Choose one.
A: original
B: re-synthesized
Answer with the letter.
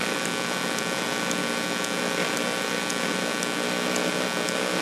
A